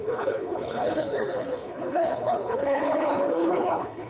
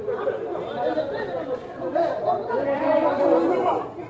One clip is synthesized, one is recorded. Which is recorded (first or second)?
second